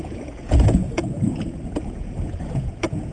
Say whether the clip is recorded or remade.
remade